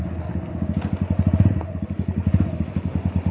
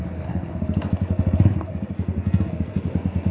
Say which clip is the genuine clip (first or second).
first